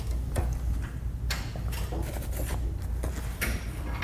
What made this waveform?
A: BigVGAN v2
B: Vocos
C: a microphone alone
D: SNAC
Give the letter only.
C